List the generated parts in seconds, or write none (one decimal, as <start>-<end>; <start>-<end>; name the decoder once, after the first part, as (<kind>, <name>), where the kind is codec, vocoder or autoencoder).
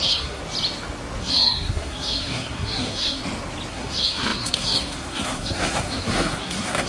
0.0-0.4 (codec, SNAC); 1.2-3.2; 3.7-6.9